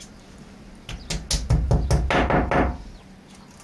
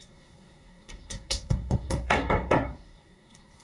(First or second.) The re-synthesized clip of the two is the second